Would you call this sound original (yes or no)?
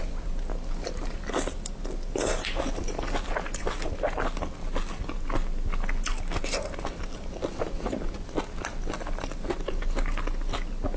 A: yes